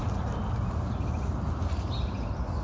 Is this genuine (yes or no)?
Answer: yes